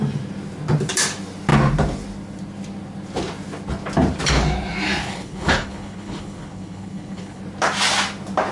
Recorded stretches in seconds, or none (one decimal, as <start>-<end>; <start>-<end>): 0.0-5.0; 7.4-8.5